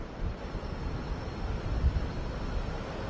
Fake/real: real